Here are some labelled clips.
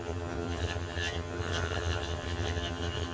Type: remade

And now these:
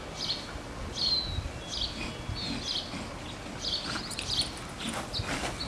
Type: recorded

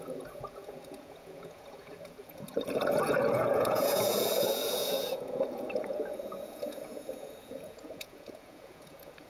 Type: remade